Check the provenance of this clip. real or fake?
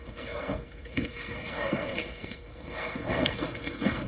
fake